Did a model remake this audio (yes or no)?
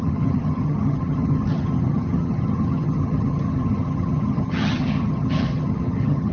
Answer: yes